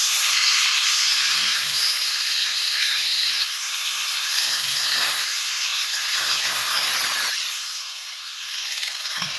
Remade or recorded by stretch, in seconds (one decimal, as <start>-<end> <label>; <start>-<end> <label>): 0.0-6.9 remade; 6.9-7.5 recorded; 7.5-9.4 remade